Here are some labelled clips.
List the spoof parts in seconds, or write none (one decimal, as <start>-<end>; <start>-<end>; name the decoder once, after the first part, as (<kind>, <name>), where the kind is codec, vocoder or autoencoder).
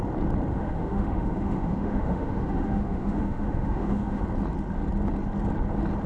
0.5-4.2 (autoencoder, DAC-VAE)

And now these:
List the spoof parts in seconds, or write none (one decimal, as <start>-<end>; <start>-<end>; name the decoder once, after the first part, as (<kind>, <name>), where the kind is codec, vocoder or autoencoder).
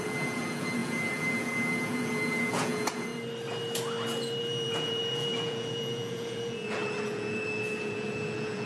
0.0-3.1 (vocoder, Vocos); 4.4-8.7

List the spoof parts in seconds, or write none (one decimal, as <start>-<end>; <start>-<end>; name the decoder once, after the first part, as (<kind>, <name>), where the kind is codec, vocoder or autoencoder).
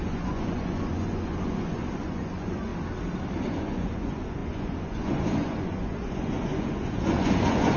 0.0-2.7 (vocoder, Vocos); 3.4-7.8